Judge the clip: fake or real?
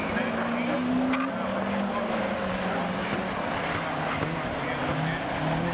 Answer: real